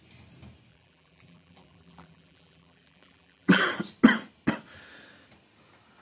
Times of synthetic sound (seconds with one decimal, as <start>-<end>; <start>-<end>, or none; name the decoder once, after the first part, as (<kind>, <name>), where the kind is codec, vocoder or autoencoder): 0.7-3.6 (vocoder, BigVGAN v2)